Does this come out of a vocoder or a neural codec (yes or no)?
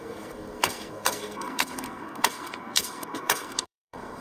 yes